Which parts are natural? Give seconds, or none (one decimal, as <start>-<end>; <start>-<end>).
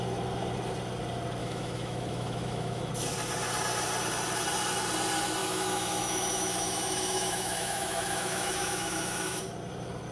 0.0-1.4; 2.9-5.4; 9.4-10.1